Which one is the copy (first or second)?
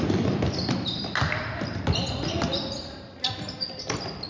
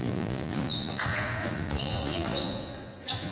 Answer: second